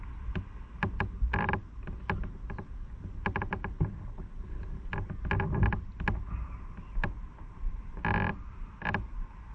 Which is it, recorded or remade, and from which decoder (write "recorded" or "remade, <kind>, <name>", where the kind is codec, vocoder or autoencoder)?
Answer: recorded